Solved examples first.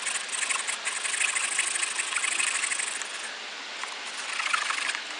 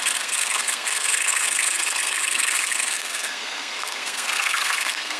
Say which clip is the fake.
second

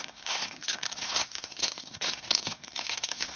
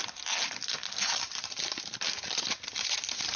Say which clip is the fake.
first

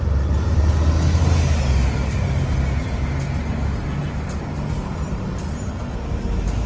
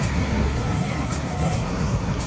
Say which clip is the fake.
second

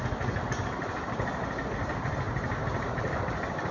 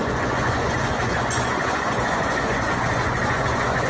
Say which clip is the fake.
second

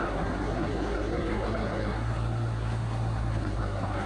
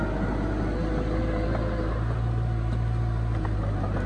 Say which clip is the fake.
first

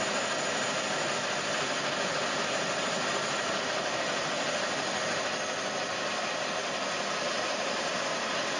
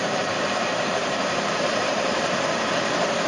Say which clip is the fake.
second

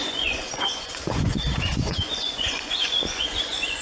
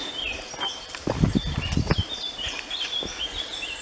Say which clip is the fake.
first